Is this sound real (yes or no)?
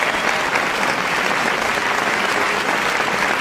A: yes